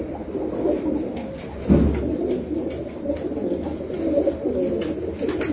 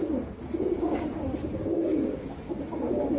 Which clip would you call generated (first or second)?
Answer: second